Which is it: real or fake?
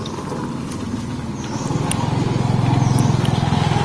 real